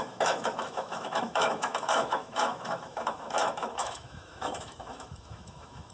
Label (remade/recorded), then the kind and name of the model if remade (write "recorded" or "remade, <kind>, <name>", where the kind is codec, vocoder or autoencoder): remade, autoencoder, DAC-VAE